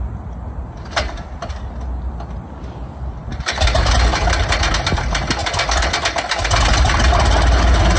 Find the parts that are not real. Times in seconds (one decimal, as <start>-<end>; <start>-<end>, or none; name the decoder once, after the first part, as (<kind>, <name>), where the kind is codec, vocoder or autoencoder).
none